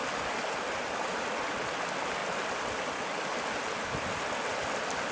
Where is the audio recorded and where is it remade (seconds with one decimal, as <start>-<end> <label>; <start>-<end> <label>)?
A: 0.0-5.1 recorded